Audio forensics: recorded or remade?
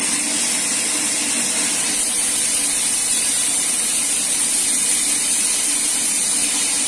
recorded